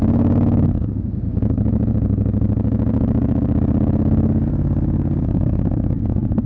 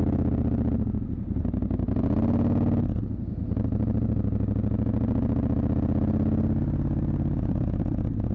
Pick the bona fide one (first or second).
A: second